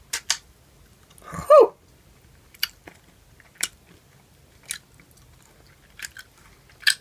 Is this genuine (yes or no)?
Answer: yes